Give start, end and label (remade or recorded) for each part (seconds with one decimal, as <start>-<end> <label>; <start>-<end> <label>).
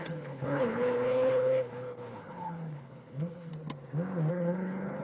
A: 0.0-3.5 remade; 3.5-4.3 recorded; 4.3-5.0 remade